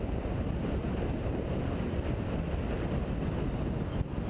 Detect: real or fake real